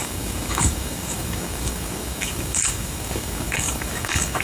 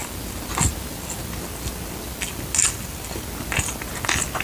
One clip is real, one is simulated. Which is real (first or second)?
second